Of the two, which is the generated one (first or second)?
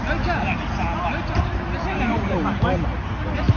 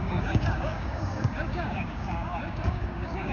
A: second